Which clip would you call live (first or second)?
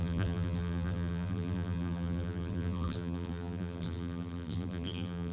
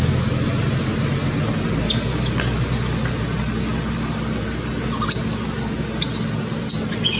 second